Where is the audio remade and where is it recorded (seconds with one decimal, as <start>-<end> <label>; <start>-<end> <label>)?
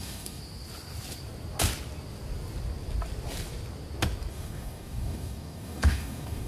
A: 0.0-0.4 remade; 0.4-4.3 recorded; 4.3-6.5 remade